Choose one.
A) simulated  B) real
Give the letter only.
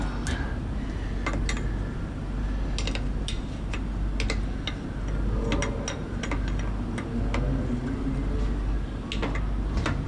B